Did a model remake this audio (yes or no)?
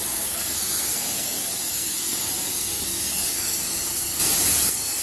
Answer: yes